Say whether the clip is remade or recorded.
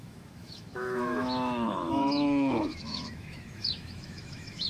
remade